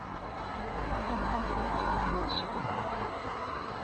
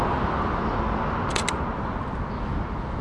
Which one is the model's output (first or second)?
first